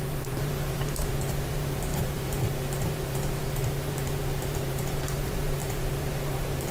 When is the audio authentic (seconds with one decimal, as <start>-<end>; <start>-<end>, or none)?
none